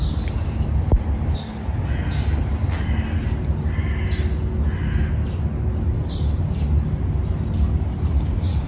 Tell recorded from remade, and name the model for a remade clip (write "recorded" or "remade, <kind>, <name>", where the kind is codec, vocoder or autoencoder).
recorded